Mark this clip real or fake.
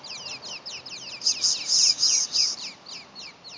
real